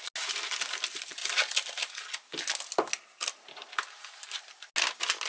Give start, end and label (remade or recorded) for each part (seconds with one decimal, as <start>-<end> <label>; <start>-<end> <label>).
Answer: 0.0-5.3 recorded